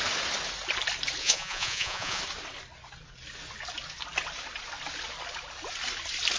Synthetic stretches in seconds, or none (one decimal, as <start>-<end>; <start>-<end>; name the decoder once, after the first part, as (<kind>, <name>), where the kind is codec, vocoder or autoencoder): 1.2-2.2 (vocoder, Vocos)